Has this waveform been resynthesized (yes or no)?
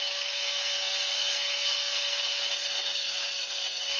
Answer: yes